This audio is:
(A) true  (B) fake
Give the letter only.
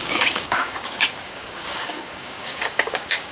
B